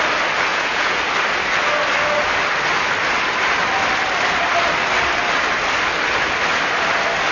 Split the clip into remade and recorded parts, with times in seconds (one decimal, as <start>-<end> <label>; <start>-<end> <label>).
0.0-0.5 recorded; 0.5-1.0 remade; 1.0-7.3 recorded